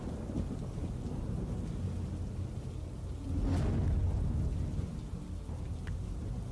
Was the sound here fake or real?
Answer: real